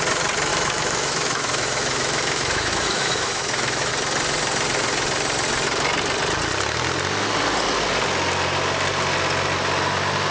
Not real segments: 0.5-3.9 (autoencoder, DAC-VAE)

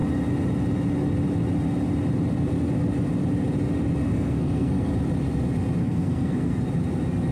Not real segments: 4.1-4.9 (codec, SNAC); 5.8-6.7

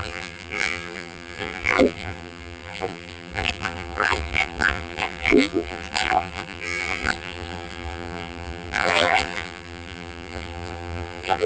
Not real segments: 0.0-11.5 (vocoder, BigVGAN v2)

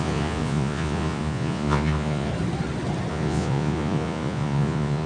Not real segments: 0.0-2.3 (vocoder, Vocos); 3.1-5.1

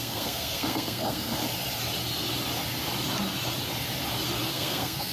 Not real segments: 0.0-1.4 (codec, SNAC); 4.5-5.1

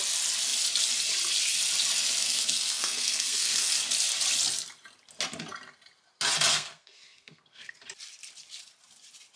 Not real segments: 2.2-3.7 (codec, SNAC); 6.5-7.7

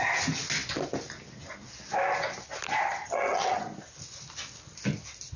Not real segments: 3.0-3.6 (vocoder, HiFi-GAN)

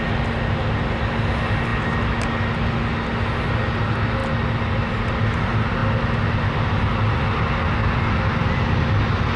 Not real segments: none